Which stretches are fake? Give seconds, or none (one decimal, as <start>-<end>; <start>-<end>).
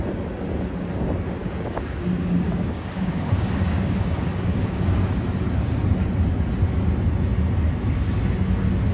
1.4-4.8